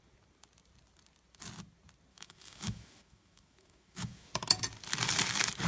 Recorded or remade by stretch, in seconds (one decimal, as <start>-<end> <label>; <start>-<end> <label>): 0.0-2.1 recorded; 2.1-4.3 remade; 4.3-5.7 recorded